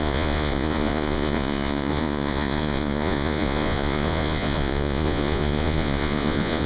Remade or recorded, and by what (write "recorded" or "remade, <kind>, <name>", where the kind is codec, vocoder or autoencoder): remade, vocoder, Vocos